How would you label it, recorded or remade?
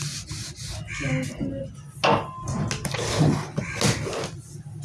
recorded